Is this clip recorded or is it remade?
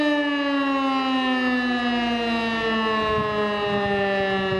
recorded